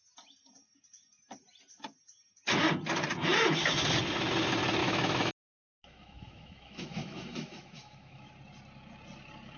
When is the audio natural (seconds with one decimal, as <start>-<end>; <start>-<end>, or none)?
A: 0.0-4.8; 5.3-5.7; 8.3-9.6